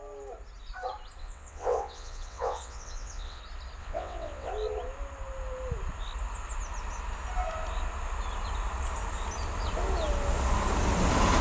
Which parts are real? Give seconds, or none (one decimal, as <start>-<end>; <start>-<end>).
0.0-1.2; 3.4-3.8; 4.5-11.4